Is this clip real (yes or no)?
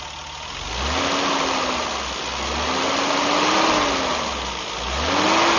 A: yes